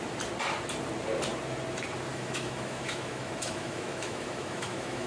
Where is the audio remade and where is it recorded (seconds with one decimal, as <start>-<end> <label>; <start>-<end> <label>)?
0.0-2.1 recorded; 2.1-5.1 remade